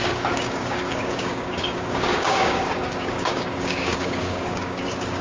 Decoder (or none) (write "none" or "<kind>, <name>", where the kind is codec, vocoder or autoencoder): codec, DAC